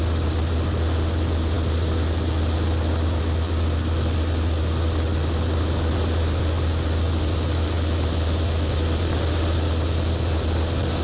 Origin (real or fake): real